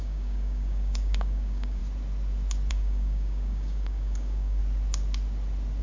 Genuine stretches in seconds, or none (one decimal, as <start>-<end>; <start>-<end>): 1.8-2.7; 4.6-5.8